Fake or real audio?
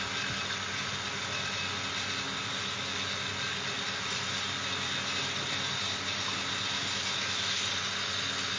real